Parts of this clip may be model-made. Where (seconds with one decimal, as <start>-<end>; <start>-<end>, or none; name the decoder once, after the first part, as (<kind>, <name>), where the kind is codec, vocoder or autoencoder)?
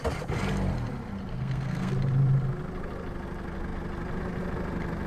1.3-1.9 (codec, SNAC)